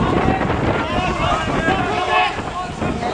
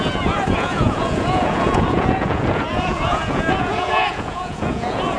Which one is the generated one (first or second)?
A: second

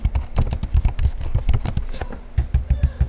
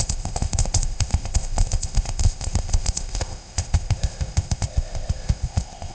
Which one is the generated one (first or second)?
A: second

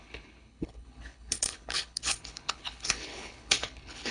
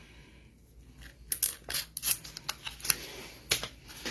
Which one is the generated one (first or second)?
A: first